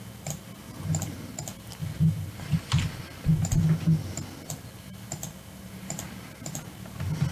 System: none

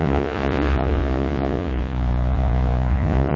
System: vocoder, Vocos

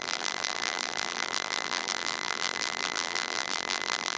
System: vocoder, BigVGAN v2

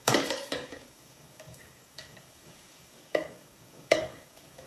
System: codec, DAC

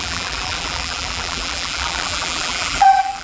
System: vocoder, BigVGAN v2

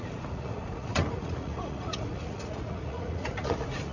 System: vocoder, Vocos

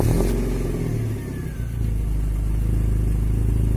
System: none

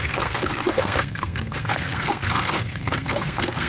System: codec, SNAC